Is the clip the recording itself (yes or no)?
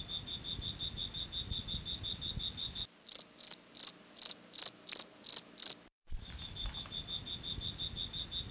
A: yes